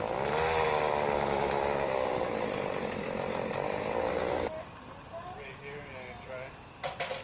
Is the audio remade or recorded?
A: recorded